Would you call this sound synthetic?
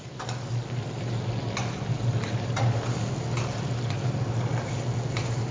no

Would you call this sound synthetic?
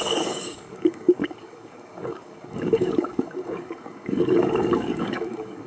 yes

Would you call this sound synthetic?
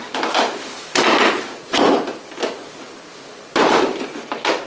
no